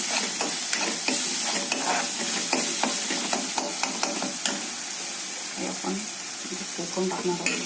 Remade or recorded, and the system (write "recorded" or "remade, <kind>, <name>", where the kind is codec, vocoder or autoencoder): recorded